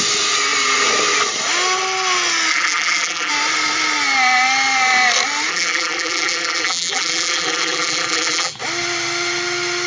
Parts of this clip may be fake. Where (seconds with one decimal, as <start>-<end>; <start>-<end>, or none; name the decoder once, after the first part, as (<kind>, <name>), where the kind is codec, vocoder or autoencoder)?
2.5-3.3 (vocoder, BigVGAN v2); 5.5-8.5